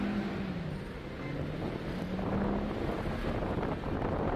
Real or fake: real